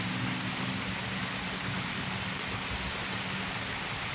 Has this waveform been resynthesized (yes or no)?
no